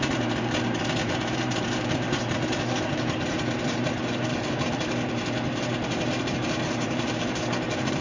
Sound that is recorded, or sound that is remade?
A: remade